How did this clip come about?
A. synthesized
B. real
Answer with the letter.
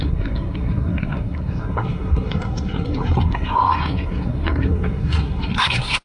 A